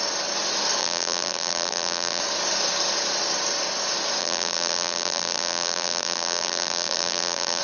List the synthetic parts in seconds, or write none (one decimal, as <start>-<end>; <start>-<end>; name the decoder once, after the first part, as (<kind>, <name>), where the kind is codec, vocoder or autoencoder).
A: 0.8-2.2 (vocoder, BigVGAN v2); 4.2-7.6